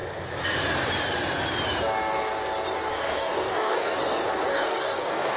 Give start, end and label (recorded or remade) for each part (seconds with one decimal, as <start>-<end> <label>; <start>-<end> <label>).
0.0-2.9 recorded; 2.9-4.0 remade; 4.0-4.5 recorded; 4.5-5.4 remade